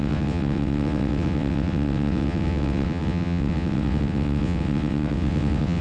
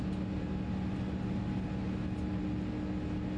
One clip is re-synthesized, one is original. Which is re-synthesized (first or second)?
first